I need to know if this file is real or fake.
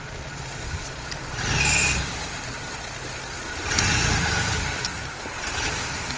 real